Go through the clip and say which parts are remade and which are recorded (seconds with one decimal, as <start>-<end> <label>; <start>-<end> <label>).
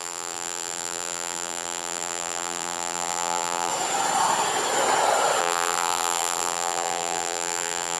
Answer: 0.0-3.7 remade; 3.7-5.4 recorded; 5.4-8.0 remade